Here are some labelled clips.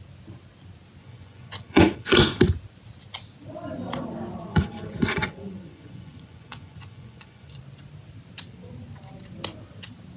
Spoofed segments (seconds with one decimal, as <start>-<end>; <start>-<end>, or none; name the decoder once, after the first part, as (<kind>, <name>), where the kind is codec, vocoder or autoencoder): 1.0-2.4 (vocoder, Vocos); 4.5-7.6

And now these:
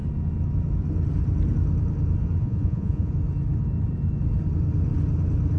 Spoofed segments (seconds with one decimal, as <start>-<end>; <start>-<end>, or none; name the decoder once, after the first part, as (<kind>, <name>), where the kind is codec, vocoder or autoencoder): 2.4-3.1 (vocoder, Vocos)

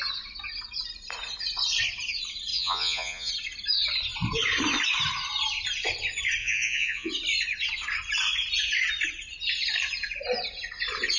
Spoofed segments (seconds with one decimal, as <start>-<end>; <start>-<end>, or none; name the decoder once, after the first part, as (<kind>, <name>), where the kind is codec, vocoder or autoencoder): 2.5-3.3 (vocoder, Vocos); 6.4-7.1